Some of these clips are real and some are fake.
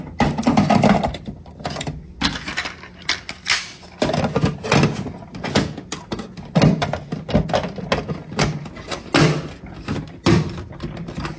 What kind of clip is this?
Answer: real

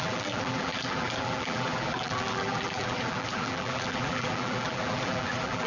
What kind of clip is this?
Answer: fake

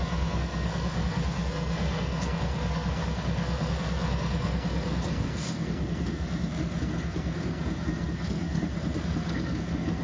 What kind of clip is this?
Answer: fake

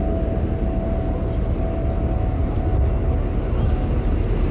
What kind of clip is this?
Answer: real